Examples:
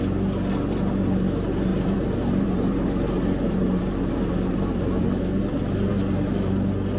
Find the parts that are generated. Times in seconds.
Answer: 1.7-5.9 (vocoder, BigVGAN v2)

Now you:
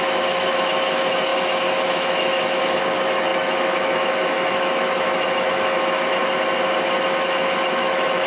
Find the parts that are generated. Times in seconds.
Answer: 0.0-6.2 (autoencoder, DAC-VAE); 7.7-8.3